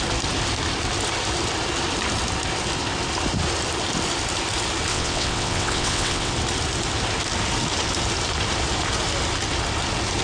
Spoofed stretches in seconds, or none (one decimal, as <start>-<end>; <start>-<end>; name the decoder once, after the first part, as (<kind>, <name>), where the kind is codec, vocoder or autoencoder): 4.9-6.3 (vocoder, WaveNeXt)